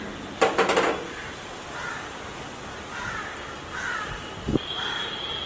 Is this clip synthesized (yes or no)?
no